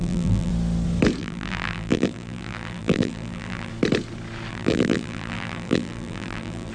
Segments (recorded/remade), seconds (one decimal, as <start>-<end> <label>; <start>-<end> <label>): 0.0-0.5 remade; 0.5-1.2 recorded; 1.2-3.7 remade; 3.7-4.5 recorded; 4.5-6.7 remade